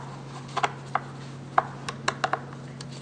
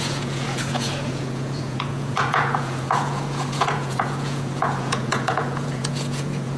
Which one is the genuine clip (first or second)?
first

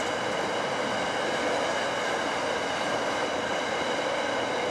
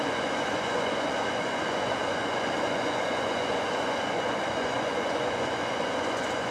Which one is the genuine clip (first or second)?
first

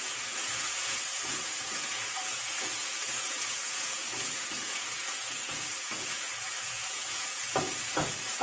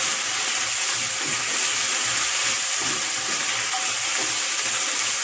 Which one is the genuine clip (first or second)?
second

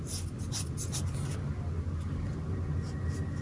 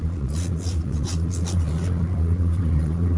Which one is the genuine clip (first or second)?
first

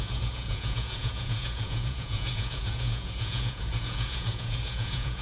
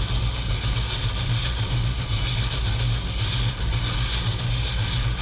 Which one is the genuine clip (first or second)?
second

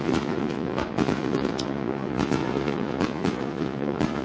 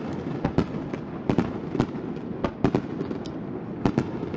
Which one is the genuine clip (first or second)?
second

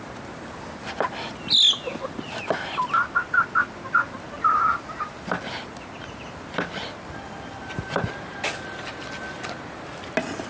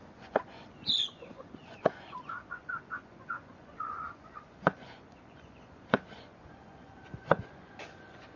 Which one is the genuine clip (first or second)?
first